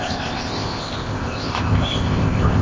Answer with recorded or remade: remade